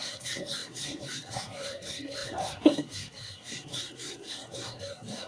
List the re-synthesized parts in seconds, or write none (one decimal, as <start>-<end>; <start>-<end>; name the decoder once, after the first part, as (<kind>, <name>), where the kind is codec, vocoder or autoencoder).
0.0-5.3 (codec, SNAC)